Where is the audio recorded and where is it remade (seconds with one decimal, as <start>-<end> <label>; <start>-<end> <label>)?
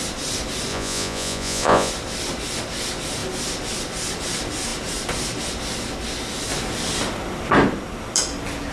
0.0-0.7 recorded; 0.7-1.9 remade; 1.9-8.7 recorded